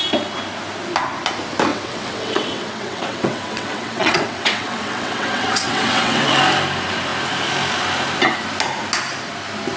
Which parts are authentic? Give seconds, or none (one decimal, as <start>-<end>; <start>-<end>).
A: 0.0-1.7; 6.4-9.8